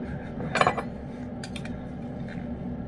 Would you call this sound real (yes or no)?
yes